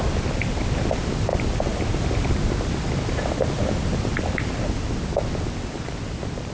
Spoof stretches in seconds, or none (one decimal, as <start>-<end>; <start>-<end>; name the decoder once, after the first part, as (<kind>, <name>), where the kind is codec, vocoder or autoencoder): none